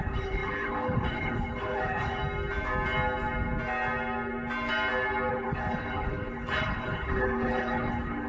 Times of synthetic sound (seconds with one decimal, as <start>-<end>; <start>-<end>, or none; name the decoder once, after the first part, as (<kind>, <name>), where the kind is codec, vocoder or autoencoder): 0.0-2.2 (codec, HILCodec); 5.3-8.3